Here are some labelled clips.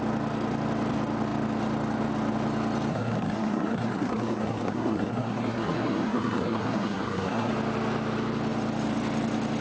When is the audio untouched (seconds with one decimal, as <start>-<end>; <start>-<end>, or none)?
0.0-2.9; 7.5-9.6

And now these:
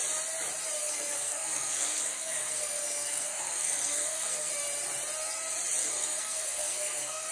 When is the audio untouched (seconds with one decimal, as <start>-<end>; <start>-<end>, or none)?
0.0-0.8; 4.5-5.8

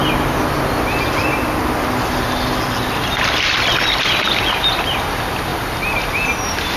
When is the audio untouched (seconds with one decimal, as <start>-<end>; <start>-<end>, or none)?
0.0-6.8

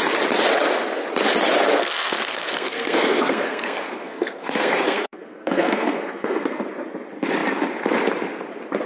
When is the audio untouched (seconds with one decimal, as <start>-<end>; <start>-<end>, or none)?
0.0-1.7; 6.6-8.9

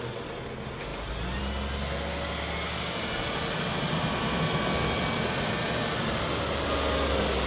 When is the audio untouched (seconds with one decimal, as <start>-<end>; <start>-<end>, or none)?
0.0-7.5